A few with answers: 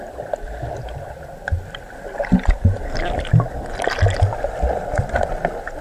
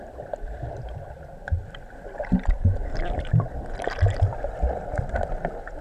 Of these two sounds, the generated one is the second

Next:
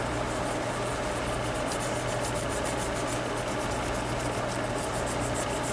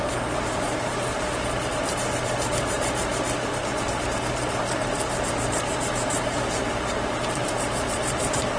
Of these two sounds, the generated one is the second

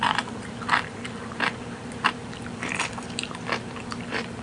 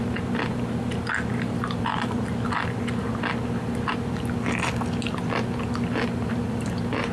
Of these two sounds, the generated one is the first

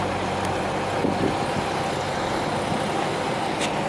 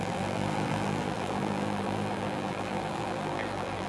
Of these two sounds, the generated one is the second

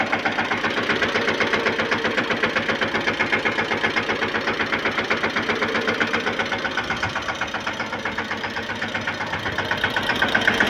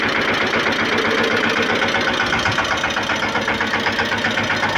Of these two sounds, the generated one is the first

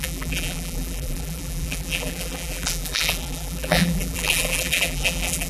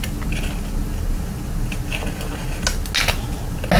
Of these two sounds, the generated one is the first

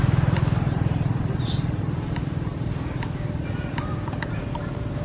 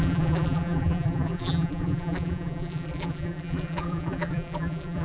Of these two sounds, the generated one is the second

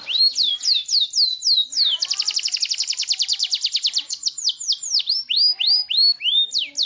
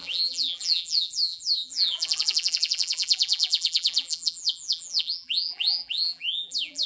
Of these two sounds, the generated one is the second